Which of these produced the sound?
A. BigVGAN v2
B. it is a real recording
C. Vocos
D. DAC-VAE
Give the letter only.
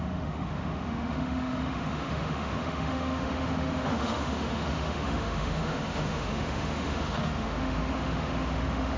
D